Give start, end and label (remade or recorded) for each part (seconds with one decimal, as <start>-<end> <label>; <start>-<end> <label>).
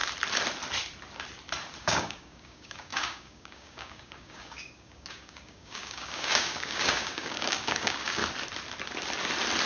0.0-1.8 recorded; 1.8-8.2 remade; 8.2-9.7 recorded